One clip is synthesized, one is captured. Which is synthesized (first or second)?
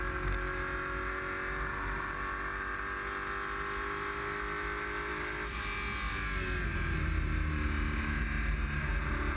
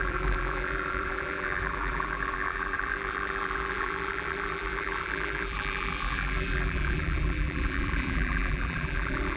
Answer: second